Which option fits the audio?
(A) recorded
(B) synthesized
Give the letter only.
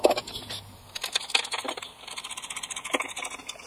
A